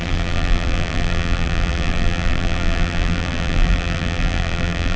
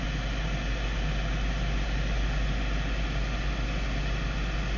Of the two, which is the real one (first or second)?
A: second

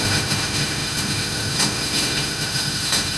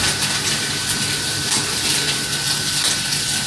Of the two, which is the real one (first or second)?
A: second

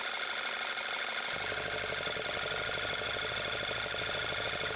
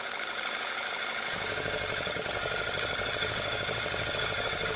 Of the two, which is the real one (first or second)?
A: first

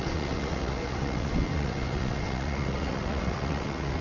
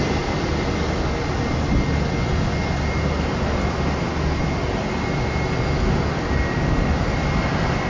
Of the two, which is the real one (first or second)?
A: second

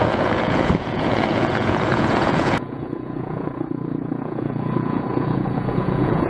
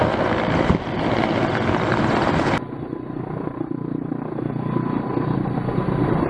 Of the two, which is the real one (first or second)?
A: second